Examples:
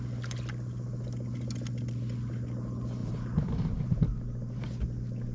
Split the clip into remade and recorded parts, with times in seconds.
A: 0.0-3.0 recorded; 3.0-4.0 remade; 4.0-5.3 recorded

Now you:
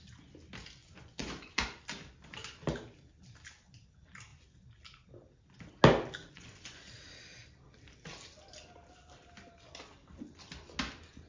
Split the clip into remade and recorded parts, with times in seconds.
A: 0.0-0.8 recorded; 0.8-1.8 remade; 1.8-6.2 recorded; 6.2-6.9 remade; 6.9-11.3 recorded

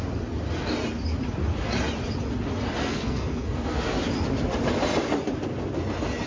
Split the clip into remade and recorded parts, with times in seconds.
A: 0.0-2.8 recorded; 2.8-4.0 remade; 4.0-6.3 recorded

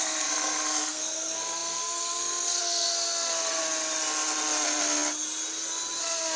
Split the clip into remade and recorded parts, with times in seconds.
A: 0.0-3.6 remade; 3.6-6.0 recorded; 6.0-6.4 remade

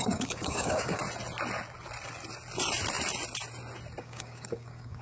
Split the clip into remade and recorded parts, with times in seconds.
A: 0.0-1.0 remade; 1.0-4.0 recorded; 4.0-5.0 remade

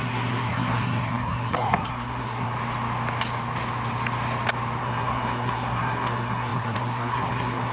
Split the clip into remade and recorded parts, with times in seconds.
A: 0.0-2.5 remade; 2.5-4.8 recorded; 4.8-7.7 remade

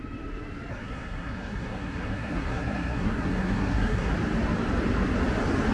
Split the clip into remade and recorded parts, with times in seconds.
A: 0.0-0.7 recorded; 0.7-4.1 remade; 4.1-5.7 recorded